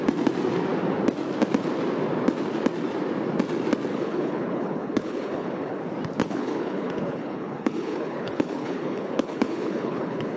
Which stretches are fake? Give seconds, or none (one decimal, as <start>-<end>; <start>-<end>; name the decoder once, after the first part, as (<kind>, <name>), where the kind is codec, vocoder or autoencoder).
3.9-5.8 (codec, HILCodec); 6.2-10.4